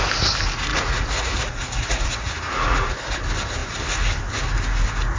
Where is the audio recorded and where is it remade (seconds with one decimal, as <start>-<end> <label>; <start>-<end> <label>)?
0.0-0.7 recorded; 0.7-3.1 remade; 3.1-5.2 recorded